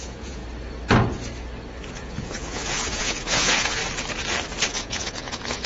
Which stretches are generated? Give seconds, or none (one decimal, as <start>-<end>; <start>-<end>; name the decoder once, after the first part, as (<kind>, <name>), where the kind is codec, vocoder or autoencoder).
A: 0.0-0.4 (vocoder, Vocos); 1.9-3.8; 4.7-5.7